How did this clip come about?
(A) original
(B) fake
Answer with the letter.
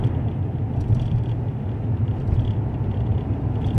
A